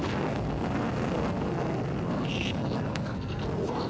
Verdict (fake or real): fake